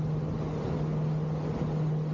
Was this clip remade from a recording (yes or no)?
no